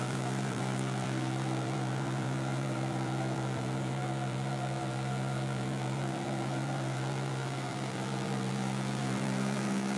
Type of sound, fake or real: fake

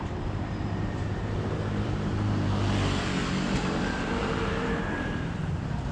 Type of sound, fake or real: fake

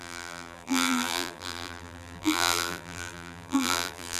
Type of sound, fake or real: fake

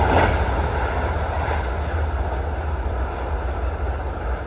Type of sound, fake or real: real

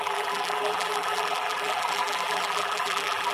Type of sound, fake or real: fake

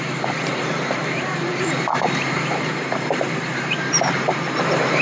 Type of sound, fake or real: fake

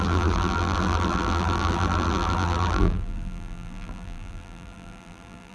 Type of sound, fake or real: fake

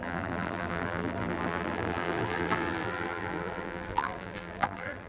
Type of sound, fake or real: fake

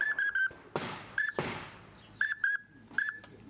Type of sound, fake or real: real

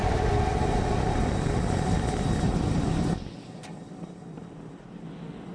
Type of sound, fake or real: real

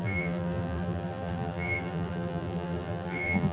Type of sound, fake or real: fake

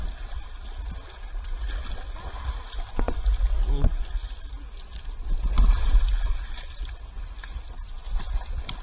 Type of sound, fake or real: real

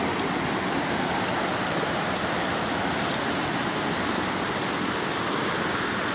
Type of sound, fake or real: real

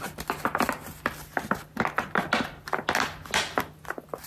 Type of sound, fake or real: real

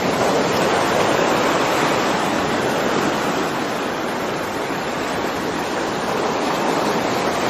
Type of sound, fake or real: fake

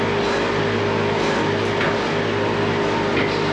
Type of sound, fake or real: real